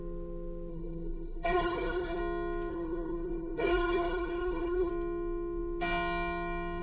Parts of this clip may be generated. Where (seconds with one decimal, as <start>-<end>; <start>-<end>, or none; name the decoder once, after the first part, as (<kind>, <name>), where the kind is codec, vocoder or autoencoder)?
0.7-2.2 (codec, SNAC); 2.7-4.9